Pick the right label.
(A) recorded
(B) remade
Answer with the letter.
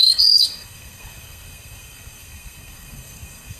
B